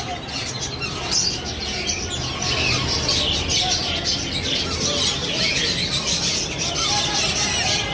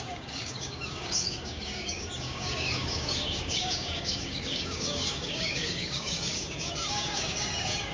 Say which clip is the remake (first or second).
second